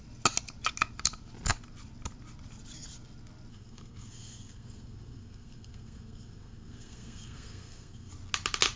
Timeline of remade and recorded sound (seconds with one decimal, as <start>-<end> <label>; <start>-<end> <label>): 0.0-3.5 recorded; 3.5-8.1 remade; 8.1-8.8 recorded